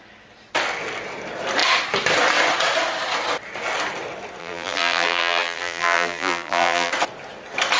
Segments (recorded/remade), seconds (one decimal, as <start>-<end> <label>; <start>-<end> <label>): 0.0-4.4 recorded; 4.4-6.9 remade; 6.9-7.8 recorded